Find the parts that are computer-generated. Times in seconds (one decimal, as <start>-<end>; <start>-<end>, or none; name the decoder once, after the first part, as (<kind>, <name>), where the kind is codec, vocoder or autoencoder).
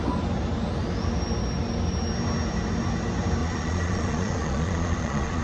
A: 3.4-5.4 (vocoder, Vocos)